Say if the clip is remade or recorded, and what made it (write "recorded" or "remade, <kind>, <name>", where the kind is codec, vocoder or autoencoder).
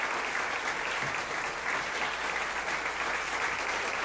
recorded